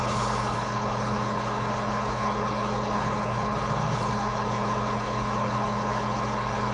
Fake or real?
fake